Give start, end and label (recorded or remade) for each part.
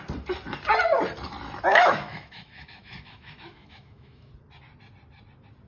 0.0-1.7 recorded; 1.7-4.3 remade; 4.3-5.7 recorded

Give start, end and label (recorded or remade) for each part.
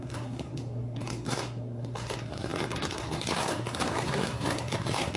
0.0-5.2 remade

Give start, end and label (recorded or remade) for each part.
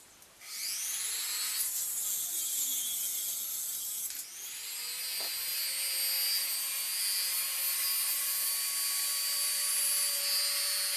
0.0-11.0 recorded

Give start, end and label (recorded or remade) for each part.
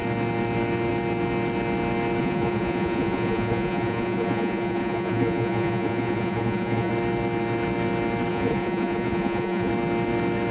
0.0-2.2 recorded; 2.2-6.9 remade; 6.9-8.3 recorded; 8.3-9.7 remade; 9.7-10.5 recorded